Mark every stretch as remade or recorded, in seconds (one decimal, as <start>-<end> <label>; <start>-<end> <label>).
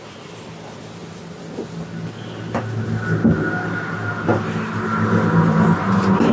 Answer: 0.0-6.3 recorded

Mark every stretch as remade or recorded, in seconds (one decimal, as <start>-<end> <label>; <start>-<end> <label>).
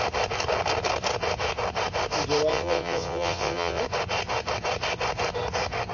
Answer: 0.0-2.5 recorded; 2.5-3.8 remade; 3.8-5.9 recorded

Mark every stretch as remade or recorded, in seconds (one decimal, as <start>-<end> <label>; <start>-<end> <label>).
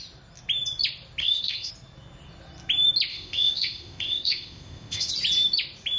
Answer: 0.0-1.2 recorded; 1.2-1.7 remade; 1.7-3.1 recorded; 3.1-5.1 remade; 5.1-6.0 recorded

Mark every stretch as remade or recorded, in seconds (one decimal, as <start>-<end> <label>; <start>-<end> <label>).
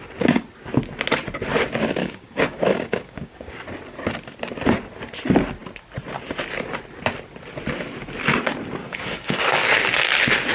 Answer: 0.0-2.0 recorded; 2.0-3.5 remade; 3.5-8.8 recorded; 8.8-9.4 remade; 9.4-10.5 recorded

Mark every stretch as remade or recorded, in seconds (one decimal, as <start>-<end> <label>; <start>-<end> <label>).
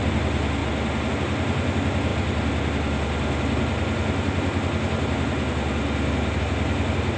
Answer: 0.0-7.2 recorded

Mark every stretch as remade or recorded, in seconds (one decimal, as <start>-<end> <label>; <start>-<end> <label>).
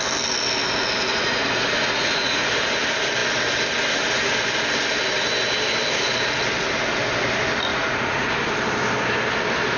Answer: 0.0-1.1 recorded; 1.1-2.5 remade; 2.5-7.7 recorded; 7.7-8.3 remade; 8.3-9.8 recorded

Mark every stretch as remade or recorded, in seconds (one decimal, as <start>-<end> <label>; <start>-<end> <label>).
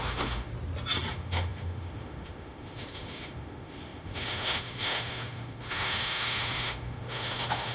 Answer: 0.0-0.5 remade; 0.5-1.1 recorded; 1.1-7.7 remade